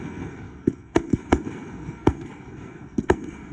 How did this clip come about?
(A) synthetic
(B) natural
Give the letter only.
A